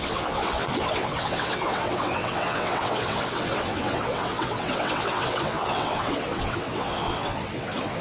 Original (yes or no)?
no